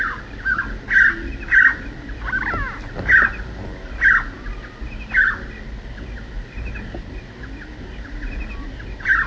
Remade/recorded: recorded